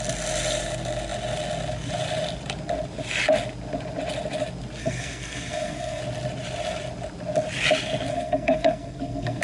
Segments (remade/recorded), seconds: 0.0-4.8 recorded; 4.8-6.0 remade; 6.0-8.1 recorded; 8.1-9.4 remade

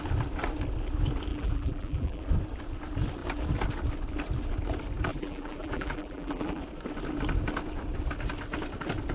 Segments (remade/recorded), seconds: 0.0-1.3 recorded; 1.3-2.2 remade; 2.2-5.1 recorded; 5.1-6.6 remade; 6.6-9.1 recorded

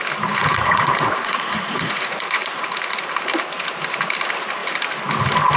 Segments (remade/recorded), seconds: 0.0-0.4 recorded; 0.4-2.7 remade; 2.7-5.6 recorded